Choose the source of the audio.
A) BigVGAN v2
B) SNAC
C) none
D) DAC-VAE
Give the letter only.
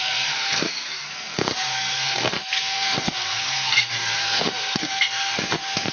B